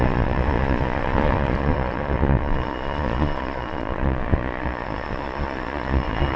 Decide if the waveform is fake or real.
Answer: fake